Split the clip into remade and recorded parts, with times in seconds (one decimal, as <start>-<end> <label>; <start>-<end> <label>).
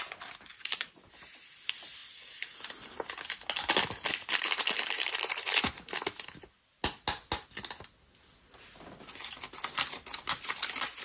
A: 0.0-11.0 recorded